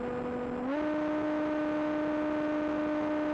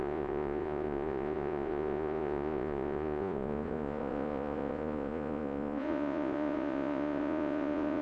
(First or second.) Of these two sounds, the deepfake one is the second